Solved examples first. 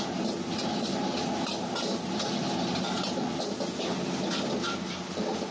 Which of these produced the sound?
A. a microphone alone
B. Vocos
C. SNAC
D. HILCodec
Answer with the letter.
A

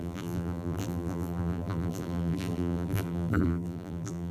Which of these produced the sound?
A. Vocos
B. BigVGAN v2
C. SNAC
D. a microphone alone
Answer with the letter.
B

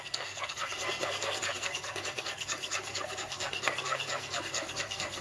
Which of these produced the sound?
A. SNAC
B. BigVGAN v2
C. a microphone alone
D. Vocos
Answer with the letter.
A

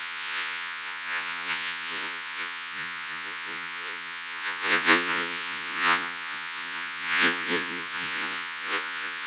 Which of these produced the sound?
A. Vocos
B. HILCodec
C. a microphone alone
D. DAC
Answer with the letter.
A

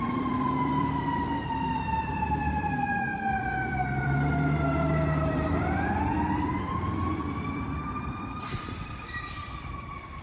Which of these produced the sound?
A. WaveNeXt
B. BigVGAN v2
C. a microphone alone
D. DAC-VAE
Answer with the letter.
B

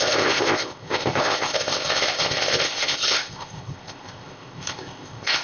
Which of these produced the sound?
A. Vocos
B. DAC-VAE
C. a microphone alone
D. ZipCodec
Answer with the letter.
D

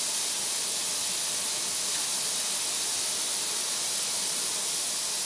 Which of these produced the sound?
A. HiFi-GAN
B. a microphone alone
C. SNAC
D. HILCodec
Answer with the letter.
B